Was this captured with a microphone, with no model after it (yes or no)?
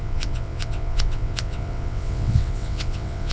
no